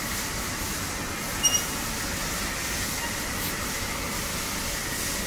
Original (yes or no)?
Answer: yes